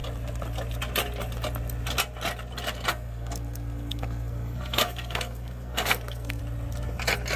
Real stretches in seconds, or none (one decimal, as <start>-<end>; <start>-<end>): 0.0-2.9; 6.4-7.4